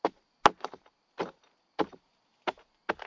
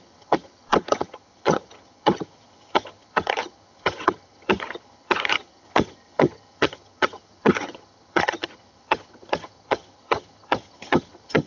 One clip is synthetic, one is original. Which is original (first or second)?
first